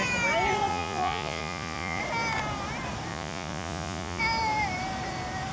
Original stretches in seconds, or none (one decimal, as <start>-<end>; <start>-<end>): 0.0-0.7; 2.0-3.1; 4.2-5.5